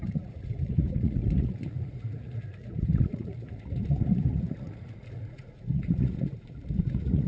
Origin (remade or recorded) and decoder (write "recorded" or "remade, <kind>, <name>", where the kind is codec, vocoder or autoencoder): remade, vocoder, Vocos